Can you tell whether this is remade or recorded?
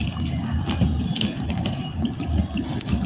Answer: remade